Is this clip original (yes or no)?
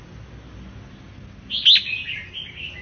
yes